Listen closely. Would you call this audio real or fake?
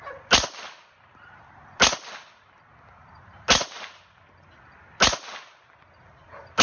real